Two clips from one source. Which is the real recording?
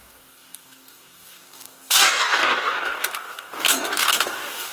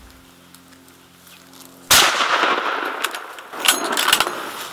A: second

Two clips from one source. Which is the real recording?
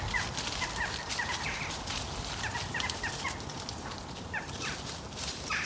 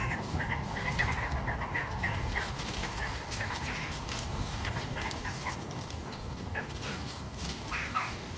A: first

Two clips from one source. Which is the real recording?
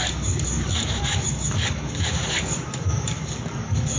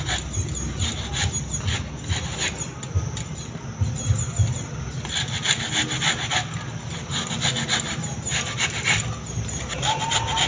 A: second